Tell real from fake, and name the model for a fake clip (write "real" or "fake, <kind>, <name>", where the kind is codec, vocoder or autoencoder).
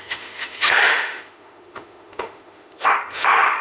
fake, autoencoder, DAC-VAE